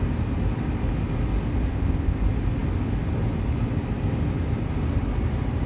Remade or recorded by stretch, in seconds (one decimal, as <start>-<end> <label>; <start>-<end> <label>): 0.0-1.7 recorded; 1.7-2.2 remade; 2.2-5.7 recorded

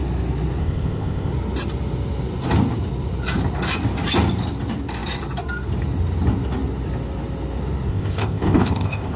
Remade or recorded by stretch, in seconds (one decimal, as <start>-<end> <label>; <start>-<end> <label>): 0.0-0.6 recorded; 0.6-1.3 remade; 1.3-7.9 recorded; 7.9-9.2 remade

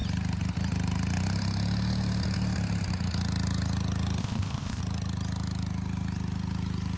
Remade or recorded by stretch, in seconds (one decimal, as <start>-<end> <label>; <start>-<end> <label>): 0.0-4.2 recorded; 4.2-4.8 remade; 4.8-7.0 recorded